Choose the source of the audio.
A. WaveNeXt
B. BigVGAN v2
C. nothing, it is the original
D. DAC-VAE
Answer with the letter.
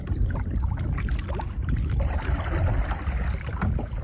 C